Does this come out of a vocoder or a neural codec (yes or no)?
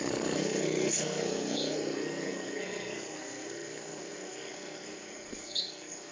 yes